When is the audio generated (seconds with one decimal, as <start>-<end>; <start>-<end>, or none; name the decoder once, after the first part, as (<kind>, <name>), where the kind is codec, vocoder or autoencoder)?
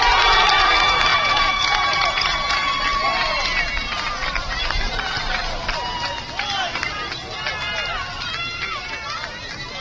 1.1-2.7 (vocoder, Vocos)